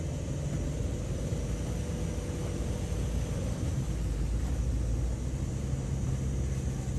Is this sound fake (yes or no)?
no